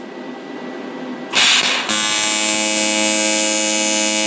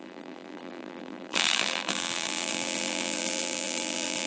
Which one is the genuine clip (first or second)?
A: first